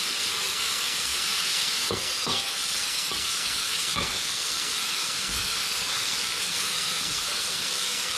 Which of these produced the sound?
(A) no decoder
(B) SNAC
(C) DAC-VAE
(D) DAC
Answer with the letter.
B